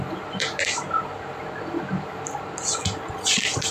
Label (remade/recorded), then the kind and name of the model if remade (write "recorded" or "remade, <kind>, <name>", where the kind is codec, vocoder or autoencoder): remade, vocoder, BigVGAN v2